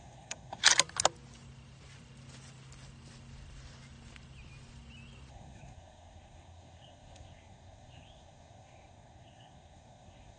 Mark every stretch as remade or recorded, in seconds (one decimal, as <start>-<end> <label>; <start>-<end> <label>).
0.0-0.6 remade; 0.6-5.3 recorded; 5.3-10.4 remade